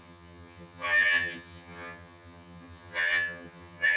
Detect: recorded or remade remade